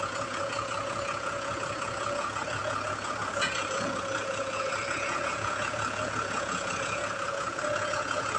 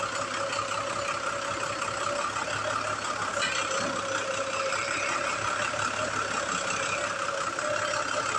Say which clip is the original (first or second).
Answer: second